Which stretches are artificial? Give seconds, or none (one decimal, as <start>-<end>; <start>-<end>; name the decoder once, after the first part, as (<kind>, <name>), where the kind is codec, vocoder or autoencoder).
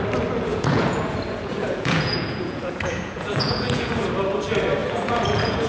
0.5-3.9 (vocoder, Vocos); 4.8-5.7